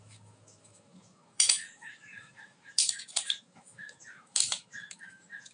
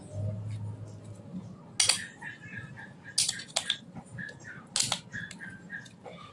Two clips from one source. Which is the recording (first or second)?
second